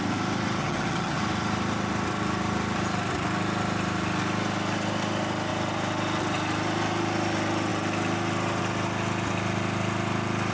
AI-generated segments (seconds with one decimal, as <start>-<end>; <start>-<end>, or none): 0.6-1.2